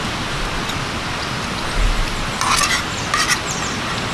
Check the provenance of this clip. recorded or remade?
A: recorded